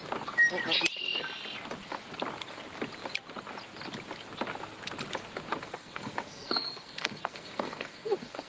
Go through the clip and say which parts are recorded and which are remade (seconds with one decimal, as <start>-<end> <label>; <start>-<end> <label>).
0.0-5.6 recorded; 5.6-8.5 remade